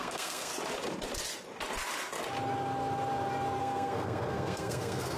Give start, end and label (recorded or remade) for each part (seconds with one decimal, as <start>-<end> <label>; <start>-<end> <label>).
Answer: 0.0-0.5 remade; 0.5-3.6 recorded; 3.6-5.2 remade